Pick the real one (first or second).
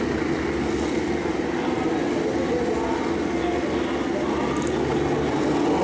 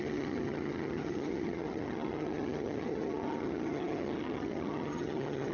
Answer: first